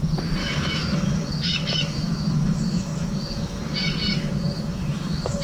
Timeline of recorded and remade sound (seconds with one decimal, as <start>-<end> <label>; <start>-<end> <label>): 0.0-0.4 recorded; 0.4-3.6 remade; 3.6-4.0 recorded; 4.0-5.4 remade